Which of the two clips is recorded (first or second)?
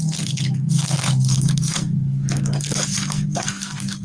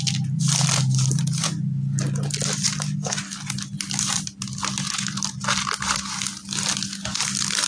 second